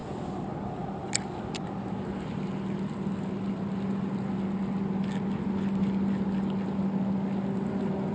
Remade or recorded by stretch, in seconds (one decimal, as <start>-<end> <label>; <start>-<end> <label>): 0.0-8.1 recorded